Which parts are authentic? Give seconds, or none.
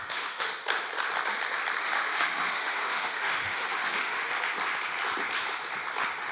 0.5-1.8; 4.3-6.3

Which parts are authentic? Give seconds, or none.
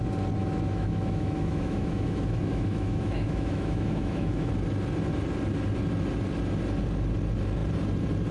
0.0-0.4; 4.5-8.3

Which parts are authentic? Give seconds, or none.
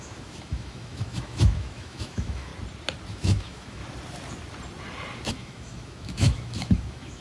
2.5-3.1; 3.8-5.3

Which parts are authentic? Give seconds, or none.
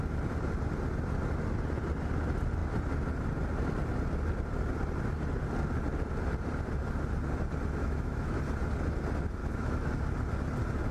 0.0-7.8; 8.4-9.4; 9.9-10.9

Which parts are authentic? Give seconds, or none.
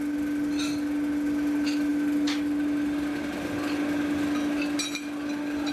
0.0-5.7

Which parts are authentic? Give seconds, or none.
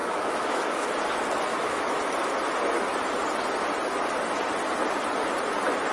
0.9-1.5; 2.0-5.9